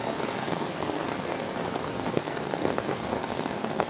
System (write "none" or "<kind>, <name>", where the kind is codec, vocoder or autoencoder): codec, SNAC